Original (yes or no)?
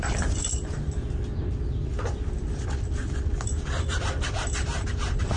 yes